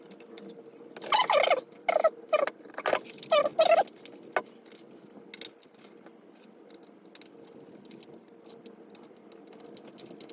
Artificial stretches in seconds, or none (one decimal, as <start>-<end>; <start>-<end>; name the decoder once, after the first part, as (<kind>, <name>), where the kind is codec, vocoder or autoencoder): none